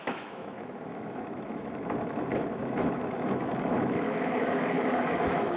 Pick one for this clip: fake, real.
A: fake